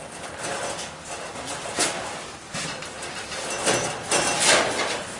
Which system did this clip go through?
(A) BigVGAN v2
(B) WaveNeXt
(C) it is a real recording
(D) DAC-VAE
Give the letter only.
C